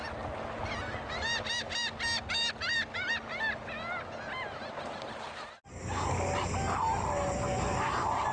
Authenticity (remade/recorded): recorded